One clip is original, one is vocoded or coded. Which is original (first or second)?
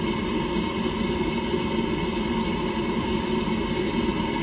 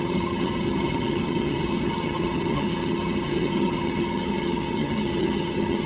first